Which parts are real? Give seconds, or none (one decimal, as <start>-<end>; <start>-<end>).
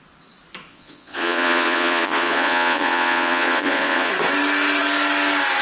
0.0-0.7; 4.1-5.6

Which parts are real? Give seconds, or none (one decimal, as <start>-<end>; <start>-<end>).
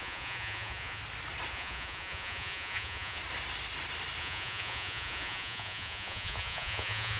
1.0-1.5; 3.2-4.2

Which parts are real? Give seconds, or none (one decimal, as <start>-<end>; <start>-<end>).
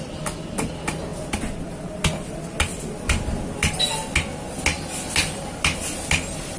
0.0-6.6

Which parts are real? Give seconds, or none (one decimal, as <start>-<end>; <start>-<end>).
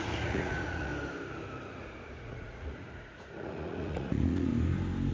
0.9-1.7; 4.5-5.1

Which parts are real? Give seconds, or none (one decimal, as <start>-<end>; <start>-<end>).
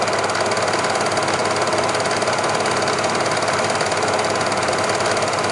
0.0-5.5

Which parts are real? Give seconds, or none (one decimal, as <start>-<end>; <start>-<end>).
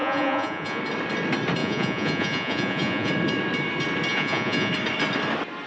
0.8-1.6; 3.1-4.1; 4.7-5.7